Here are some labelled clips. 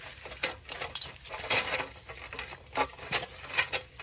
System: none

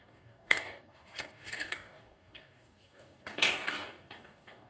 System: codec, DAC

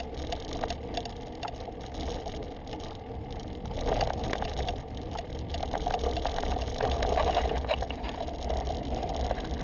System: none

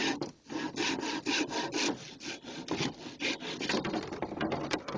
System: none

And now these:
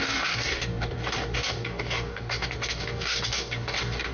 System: codec, DAC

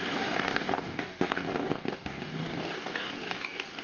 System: codec, DAC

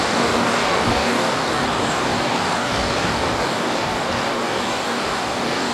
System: codec, DAC